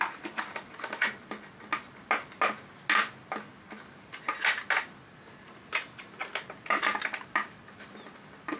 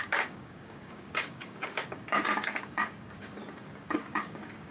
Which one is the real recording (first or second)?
first